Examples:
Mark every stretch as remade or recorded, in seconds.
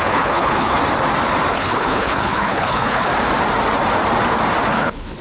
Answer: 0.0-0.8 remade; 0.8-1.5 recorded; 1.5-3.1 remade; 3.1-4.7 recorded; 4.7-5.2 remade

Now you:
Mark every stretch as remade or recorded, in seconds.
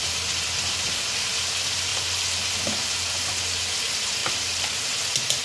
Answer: 0.0-5.4 recorded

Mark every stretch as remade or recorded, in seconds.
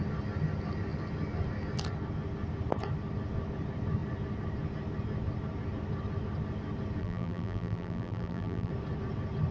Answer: 0.0-7.0 recorded; 7.0-8.7 remade; 8.7-9.5 recorded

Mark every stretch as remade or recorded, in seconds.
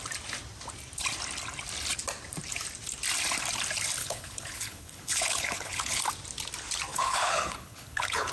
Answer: 0.0-4.0 recorded; 4.0-6.0 remade; 6.0-6.9 recorded; 6.9-8.3 remade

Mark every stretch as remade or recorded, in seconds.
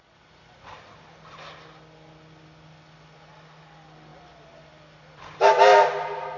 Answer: 0.0-4.1 recorded; 4.1-5.5 remade; 5.5-6.4 recorded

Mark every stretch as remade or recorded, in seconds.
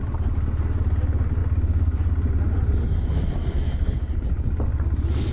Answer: 0.0-5.3 recorded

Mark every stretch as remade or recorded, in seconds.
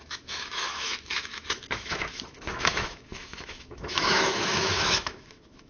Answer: 0.0-5.7 remade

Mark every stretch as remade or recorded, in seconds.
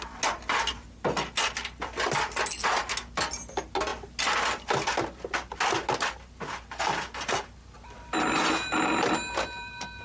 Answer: 0.0-10.0 recorded